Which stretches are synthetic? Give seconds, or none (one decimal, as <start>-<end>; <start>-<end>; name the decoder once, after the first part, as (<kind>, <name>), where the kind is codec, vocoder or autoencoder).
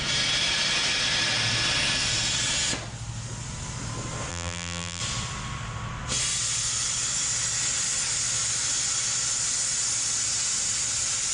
4.3-5.0 (vocoder, BigVGAN v2)